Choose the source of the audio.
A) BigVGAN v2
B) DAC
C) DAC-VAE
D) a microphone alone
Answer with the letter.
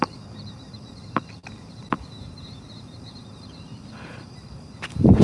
A